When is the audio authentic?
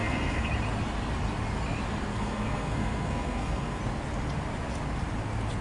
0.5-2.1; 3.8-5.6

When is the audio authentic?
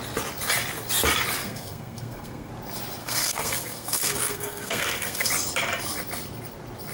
0.0-1.4; 2.5-3.0; 5.3-6.9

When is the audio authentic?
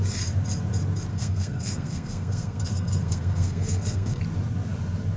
0.0-1.1; 4.2-5.2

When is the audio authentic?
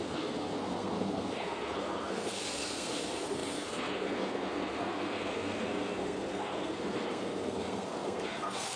none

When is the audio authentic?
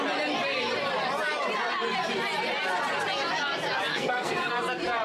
0.0-3.9; 4.5-5.0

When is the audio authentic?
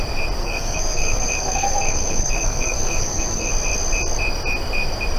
0.0-0.4; 3.5-5.2